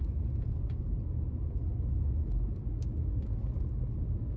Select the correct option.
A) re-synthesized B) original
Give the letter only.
B